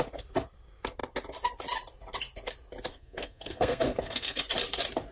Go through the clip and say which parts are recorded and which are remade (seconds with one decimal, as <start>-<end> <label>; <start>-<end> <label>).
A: 0.0-2.9 recorded; 2.9-4.4 remade; 4.4-5.1 recorded